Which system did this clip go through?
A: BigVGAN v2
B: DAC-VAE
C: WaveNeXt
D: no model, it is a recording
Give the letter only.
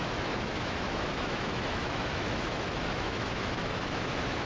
B